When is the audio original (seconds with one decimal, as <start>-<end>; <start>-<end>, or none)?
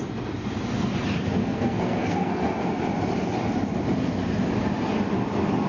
0.0-1.4; 2.7-5.7